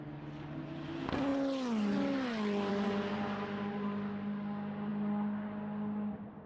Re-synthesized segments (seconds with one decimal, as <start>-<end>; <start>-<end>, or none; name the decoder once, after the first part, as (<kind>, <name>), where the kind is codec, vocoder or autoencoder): none

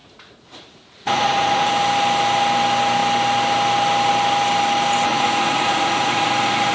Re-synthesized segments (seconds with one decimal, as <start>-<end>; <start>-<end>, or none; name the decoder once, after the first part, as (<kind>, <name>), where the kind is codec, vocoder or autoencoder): 0.0-1.7 (vocoder, Vocos); 5.1-6.7

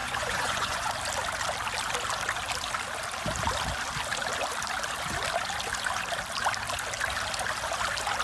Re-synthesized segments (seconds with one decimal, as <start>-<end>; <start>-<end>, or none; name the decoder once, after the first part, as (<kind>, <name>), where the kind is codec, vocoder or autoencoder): 0.0-0.9 (vocoder, Vocos)

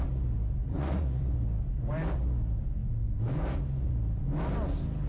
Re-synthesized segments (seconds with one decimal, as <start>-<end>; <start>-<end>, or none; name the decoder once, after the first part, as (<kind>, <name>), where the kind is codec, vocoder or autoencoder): 0.6-1.2 (vocoder, Vocos)